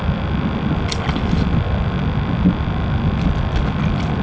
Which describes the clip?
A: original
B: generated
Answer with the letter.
A